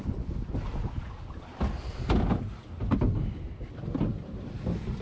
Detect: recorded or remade recorded